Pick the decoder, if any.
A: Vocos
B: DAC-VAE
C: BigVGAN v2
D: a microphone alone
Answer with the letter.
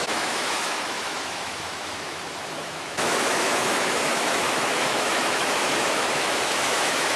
B